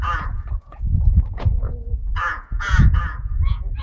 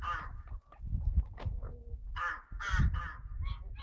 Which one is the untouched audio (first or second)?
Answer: second